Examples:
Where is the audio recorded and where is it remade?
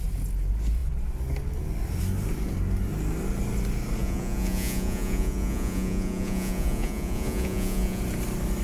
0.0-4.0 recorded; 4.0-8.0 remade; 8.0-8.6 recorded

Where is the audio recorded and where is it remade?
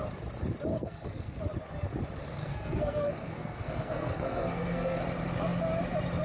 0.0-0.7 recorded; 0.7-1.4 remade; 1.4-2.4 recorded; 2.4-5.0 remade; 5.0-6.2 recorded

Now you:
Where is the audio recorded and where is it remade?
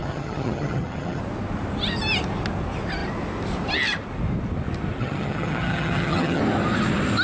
0.0-1.2 remade; 1.2-5.0 recorded; 5.0-6.4 remade; 6.4-7.2 recorded